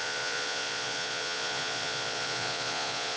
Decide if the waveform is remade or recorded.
remade